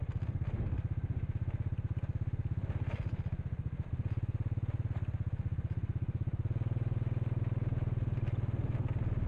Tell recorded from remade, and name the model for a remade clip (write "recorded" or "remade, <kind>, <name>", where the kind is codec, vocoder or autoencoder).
recorded